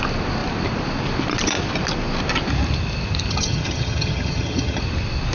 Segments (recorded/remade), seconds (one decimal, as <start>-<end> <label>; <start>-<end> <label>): 0.0-3.3 recorded; 3.3-4.8 remade; 4.8-5.3 recorded